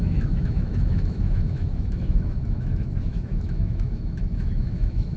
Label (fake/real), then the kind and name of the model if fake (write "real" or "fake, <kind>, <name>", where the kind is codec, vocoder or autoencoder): fake, autoencoder, DAC-VAE